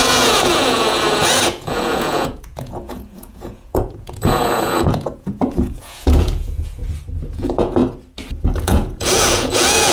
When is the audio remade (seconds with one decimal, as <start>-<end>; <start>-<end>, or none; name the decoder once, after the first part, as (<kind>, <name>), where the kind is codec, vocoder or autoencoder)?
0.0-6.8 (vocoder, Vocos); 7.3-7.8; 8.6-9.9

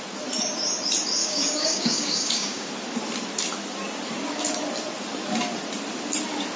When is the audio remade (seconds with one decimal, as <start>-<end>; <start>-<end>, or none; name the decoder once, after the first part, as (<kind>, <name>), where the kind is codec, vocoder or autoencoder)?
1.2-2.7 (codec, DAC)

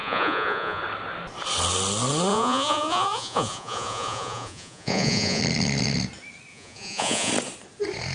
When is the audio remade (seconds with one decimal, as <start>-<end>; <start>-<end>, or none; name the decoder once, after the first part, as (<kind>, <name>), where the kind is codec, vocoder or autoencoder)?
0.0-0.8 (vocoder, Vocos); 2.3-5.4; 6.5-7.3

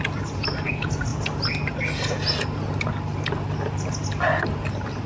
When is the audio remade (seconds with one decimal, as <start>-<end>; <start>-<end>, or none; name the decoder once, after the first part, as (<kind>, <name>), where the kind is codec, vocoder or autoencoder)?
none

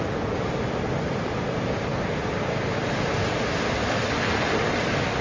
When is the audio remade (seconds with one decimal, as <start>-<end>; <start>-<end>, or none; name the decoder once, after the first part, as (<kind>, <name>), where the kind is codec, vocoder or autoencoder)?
none